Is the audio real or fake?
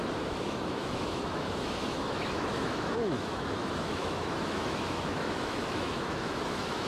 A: fake